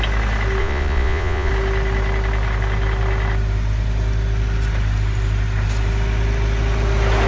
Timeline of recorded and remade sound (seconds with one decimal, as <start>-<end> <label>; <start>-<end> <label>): 0.0-0.6 recorded; 0.6-1.5 remade; 1.5-7.3 recorded

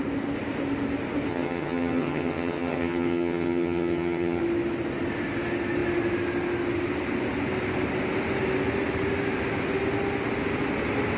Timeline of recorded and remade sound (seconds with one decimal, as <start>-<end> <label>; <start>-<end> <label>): 0.0-1.3 recorded; 1.3-4.4 remade; 4.4-11.2 recorded

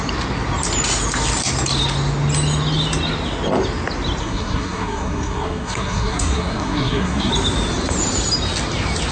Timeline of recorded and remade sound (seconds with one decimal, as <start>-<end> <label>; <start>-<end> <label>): 0.0-4.2 recorded; 4.2-7.3 remade; 7.3-9.1 recorded

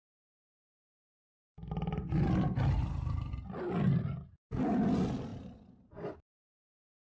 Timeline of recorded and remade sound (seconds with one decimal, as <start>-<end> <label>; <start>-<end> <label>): 0.0-5.3 recorded; 5.3-6.3 remade; 6.3-7.1 recorded

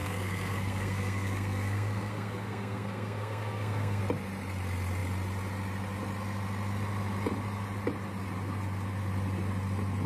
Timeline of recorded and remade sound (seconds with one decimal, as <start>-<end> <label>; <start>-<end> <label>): 0.0-4.0 remade; 4.0-10.1 recorded